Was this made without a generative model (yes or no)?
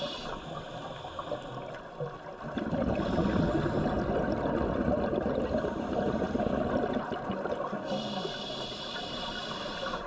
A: yes